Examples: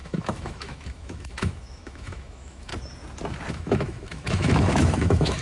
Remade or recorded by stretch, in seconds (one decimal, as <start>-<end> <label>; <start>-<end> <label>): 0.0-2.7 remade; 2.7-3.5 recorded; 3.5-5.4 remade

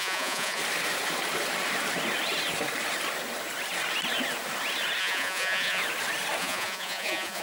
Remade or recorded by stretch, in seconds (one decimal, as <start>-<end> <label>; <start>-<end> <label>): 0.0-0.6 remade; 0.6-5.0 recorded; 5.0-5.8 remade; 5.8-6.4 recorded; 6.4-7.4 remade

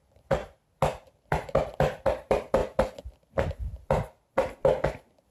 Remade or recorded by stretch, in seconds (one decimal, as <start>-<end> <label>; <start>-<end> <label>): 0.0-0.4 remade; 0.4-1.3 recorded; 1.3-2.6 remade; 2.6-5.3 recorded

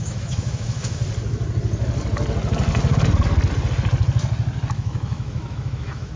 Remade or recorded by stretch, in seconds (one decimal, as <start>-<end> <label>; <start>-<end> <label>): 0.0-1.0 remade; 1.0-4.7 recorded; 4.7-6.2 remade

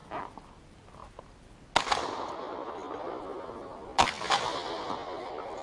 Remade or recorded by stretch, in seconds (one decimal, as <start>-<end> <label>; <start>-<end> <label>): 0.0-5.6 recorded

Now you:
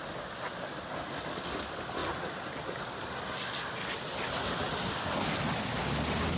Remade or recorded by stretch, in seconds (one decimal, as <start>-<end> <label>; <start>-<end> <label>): 0.0-6.4 recorded

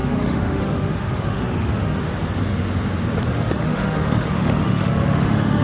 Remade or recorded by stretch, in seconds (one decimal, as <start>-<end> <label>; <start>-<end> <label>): 0.0-2.1 remade; 2.1-3.3 recorded; 3.3-5.6 remade